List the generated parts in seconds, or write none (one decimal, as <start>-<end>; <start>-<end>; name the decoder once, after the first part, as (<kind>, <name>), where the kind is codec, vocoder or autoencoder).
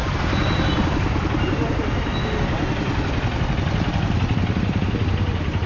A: none